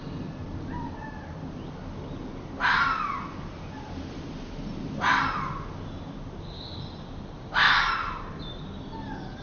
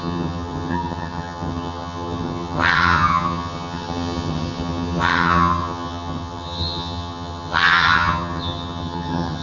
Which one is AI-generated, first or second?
second